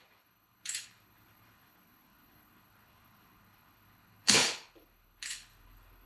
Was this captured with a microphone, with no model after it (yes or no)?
no